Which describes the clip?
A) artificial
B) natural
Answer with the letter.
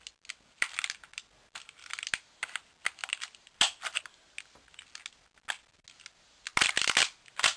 B